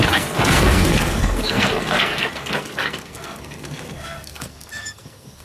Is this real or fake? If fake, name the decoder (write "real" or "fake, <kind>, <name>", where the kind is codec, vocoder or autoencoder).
fake, codec, SNAC